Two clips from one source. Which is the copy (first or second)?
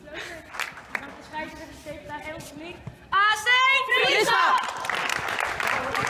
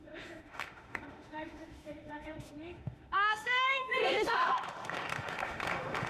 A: second